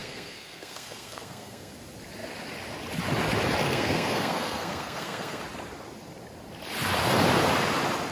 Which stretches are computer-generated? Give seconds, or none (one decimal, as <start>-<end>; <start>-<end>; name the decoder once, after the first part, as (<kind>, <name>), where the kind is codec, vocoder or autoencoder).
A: 0.0-1.7 (codec, SNAC); 3.6-5.4